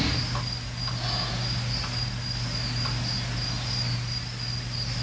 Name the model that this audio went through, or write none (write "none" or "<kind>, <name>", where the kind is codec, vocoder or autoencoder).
none